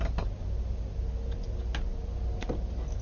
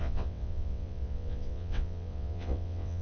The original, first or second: first